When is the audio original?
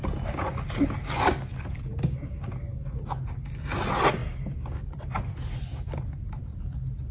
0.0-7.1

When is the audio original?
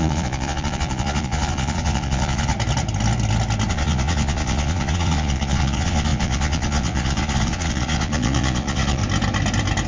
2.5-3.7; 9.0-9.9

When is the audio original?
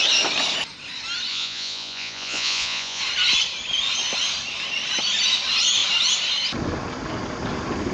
0.0-1.3; 3.0-7.9